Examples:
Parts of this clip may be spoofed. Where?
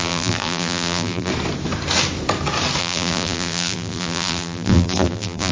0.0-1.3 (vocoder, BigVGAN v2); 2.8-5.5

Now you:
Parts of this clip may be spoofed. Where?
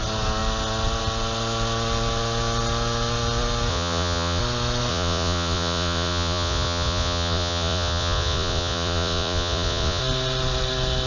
3.7-4.4 (vocoder, Vocos); 4.9-10.0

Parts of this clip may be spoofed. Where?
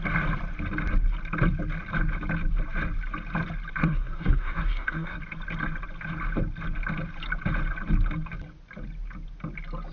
3.8-5.2 (codec, SNAC)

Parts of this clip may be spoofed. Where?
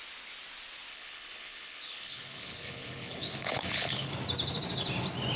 0.9-4.1 (codec, HILCodec)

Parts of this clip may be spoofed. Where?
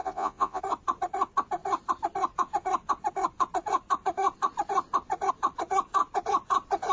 0.0-0.6 (vocoder, Vocos)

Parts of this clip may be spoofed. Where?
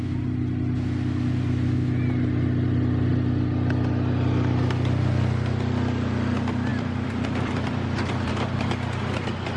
6.7-8.3 (vocoder, BigVGAN v2)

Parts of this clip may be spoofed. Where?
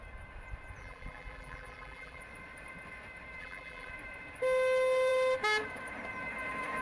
0.8-2.2 (vocoder, BigVGAN v2); 3.4-3.9